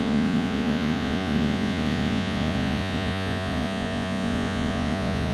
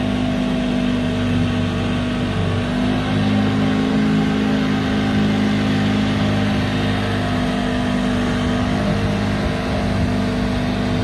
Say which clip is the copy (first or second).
first